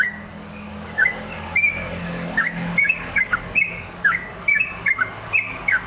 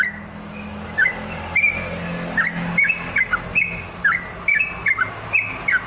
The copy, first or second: first